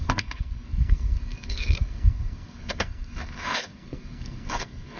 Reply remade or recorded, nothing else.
remade